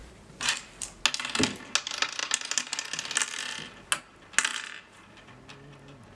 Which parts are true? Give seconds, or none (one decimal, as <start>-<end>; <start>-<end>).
1.0-6.1